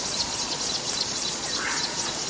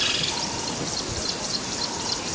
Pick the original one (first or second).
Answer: second